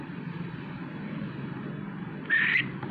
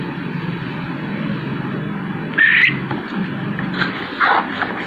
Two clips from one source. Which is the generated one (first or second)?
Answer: first